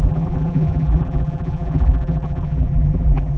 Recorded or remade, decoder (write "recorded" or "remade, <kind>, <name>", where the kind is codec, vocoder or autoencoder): remade, vocoder, BigVGAN v2